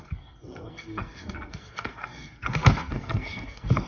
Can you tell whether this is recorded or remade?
remade